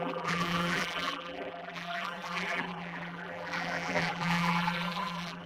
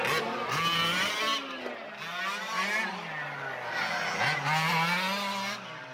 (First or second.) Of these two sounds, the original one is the second